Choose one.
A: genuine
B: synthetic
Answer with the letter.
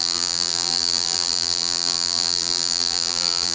B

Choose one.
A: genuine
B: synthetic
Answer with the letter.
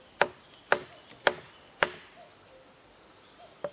A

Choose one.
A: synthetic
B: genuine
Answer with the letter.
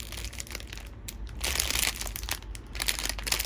B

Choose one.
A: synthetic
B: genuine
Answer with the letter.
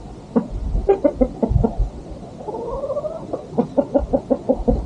B